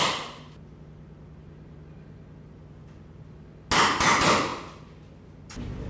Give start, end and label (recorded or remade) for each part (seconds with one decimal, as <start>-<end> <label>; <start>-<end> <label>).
0.0-5.9 recorded